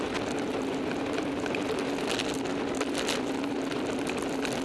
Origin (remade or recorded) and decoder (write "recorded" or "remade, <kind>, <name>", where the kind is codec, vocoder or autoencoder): recorded